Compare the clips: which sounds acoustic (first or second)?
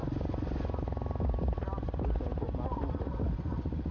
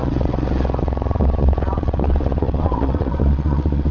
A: first